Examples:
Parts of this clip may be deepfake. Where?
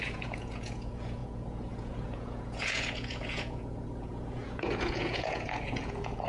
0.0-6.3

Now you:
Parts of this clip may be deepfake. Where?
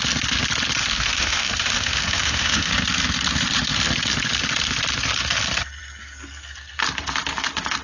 0.8-2.7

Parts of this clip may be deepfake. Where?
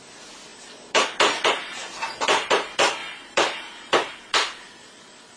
3.0-4.1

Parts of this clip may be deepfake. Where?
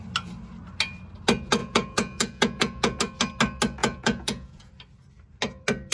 1.6-3.0; 3.8-4.7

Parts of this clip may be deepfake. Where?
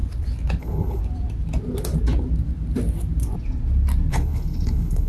0.6-1.0; 4.1-5.1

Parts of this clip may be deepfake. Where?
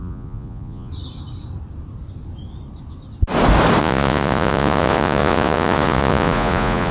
0.0-0.9; 3.8-6.9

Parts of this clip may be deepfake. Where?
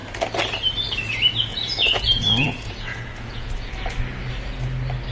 1.5-3.7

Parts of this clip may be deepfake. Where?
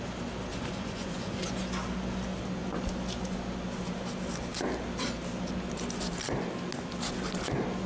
0.5-1.5